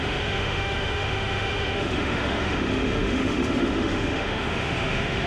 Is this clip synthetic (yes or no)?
yes